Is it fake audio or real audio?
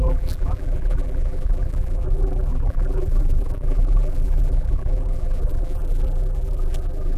fake